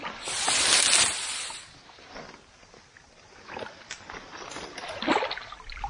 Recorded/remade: recorded